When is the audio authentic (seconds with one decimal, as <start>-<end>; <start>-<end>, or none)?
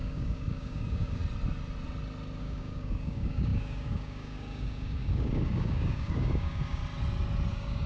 1.2-2.4; 6.8-7.5